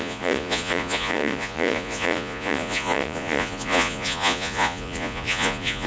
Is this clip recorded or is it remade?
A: remade